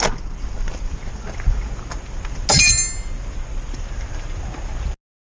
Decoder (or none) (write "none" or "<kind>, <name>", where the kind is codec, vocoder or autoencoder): none